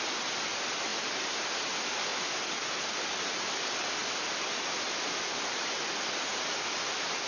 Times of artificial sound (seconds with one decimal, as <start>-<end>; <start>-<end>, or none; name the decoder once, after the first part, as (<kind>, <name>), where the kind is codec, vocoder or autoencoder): 0.9-1.7 (vocoder, BigVGAN v2); 2.1-2.8; 4.0-5.9